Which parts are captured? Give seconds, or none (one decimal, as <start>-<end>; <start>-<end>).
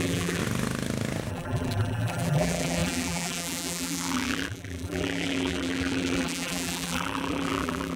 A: 0.4-1.3